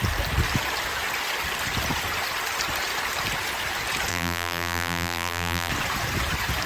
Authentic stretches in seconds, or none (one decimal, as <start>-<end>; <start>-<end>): 0.0-4.1; 5.7-6.7